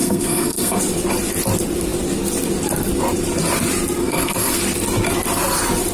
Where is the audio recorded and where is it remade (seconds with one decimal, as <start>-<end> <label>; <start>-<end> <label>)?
0.0-0.8 remade; 0.8-4.0 recorded; 4.0-4.6 remade; 4.6-5.9 recorded